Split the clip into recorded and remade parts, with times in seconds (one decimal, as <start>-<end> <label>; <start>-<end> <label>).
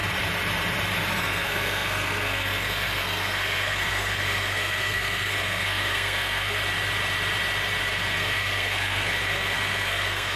0.0-1.2 recorded; 1.2-6.6 remade; 6.6-7.8 recorded; 7.8-10.4 remade